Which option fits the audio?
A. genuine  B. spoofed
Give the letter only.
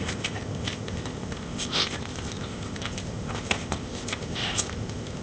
B